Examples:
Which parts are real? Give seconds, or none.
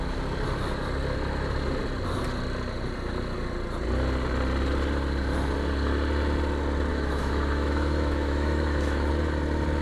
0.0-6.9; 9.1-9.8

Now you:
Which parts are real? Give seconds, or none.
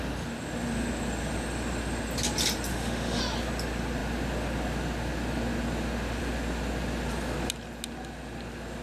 0.0-2.7; 3.2-8.8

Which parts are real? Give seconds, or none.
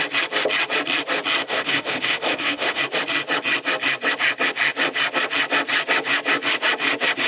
0.0-1.4; 2.8-7.3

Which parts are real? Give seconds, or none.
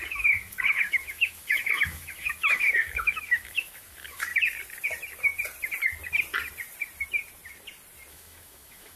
4.3-8.1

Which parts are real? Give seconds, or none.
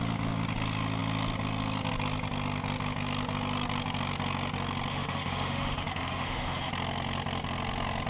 0.0-4.9; 6.7-8.1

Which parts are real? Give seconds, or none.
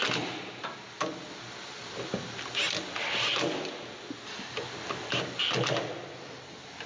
0.0-6.9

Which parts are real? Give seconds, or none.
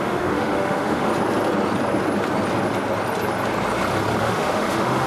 1.1-4.2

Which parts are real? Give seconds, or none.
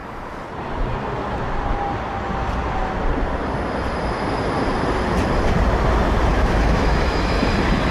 0.0-6.3; 7.4-7.9